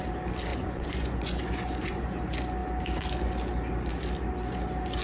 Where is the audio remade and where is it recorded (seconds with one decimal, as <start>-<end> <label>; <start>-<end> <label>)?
0.0-0.5 recorded; 0.5-2.2 remade; 2.2-5.0 recorded